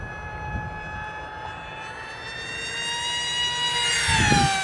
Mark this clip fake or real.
real